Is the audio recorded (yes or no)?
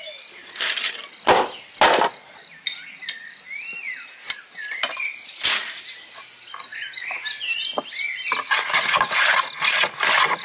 yes